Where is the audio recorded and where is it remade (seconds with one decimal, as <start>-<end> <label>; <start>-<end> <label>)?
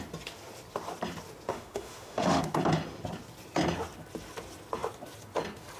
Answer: 0.0-1.5 recorded; 1.5-2.4 remade; 2.4-5.8 recorded